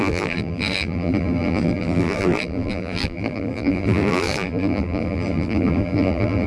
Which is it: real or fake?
fake